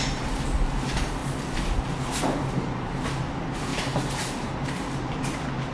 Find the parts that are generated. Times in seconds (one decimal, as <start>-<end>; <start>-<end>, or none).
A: 1.2-3.1; 3.7-5.1